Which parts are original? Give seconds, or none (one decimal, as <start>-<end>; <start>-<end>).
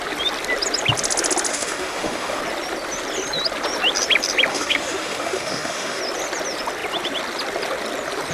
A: 0.0-1.5; 2.4-4.5; 6.0-8.3